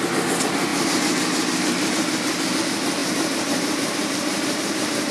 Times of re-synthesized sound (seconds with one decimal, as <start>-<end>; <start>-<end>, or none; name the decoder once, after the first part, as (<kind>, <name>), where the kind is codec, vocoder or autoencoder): 3.0-5.1 (vocoder, BigVGAN v2)

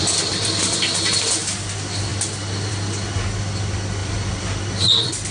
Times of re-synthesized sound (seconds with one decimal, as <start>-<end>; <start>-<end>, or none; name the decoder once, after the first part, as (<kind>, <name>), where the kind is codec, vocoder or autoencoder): 4.0-4.6 (vocoder, BigVGAN v2)

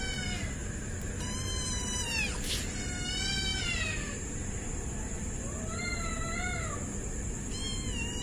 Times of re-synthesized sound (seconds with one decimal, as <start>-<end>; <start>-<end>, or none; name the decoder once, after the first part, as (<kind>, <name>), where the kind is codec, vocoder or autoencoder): 0.6-2.5 (vocoder, BigVGAN v2); 3.5-6.7

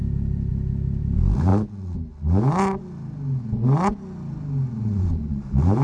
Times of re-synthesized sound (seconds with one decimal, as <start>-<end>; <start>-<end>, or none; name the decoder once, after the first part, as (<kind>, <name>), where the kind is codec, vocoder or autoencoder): 0.0-0.5 (vocoder, BigVGAN v2); 1.0-1.5; 5.0-5.8

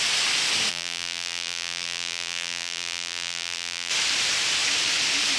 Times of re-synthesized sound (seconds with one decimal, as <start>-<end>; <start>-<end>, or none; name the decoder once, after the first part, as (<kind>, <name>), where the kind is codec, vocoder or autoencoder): 0.7-3.9 (vocoder, BigVGAN v2)

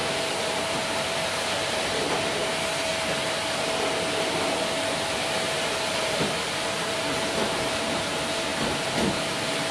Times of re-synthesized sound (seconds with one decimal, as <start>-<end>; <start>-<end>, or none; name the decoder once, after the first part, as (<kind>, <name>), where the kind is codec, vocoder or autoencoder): 0.0-2.9 (vocoder, BigVGAN v2); 4.3-9.7

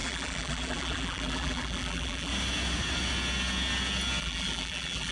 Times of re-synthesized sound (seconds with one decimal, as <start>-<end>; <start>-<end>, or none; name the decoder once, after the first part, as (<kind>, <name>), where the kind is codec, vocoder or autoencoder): 0.0-2.3 (vocoder, BigVGAN v2); 4.2-5.1

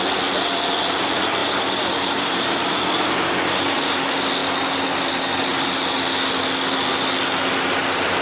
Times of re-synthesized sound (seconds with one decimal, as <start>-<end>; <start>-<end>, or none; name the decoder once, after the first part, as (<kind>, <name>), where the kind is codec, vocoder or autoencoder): 1.4-4.0 (vocoder, BigVGAN v2)